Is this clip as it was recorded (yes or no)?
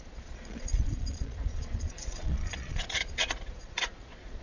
no